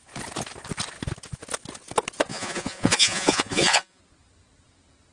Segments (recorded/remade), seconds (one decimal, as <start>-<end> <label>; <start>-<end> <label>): 0.0-2.3 recorded; 2.3-4.0 remade; 4.0-5.1 recorded